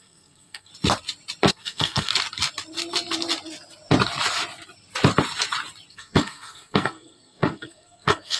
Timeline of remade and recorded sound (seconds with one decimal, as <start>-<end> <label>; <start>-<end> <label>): 0.0-0.7 remade; 0.7-1.5 recorded; 1.5-2.1 remade; 2.1-5.9 recorded; 5.9-8.4 remade